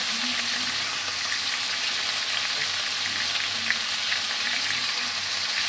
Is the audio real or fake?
real